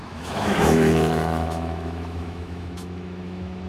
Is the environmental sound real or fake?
fake